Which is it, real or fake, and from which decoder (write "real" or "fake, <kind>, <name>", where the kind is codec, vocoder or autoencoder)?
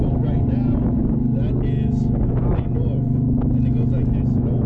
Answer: real